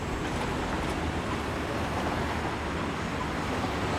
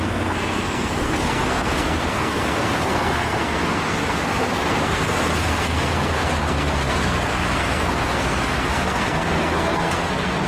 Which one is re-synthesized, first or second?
second